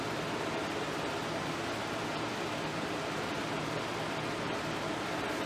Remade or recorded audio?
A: recorded